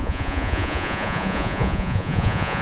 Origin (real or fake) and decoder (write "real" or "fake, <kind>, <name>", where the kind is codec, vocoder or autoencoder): fake, vocoder, Vocos